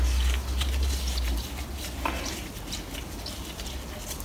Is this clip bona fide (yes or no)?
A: yes